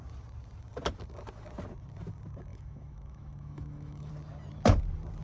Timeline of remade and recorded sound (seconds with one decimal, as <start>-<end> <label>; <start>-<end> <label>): 0.0-2.5 recorded; 2.5-4.1 remade; 4.1-5.2 recorded